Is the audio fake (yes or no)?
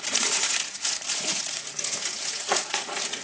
yes